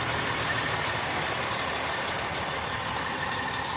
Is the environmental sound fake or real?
real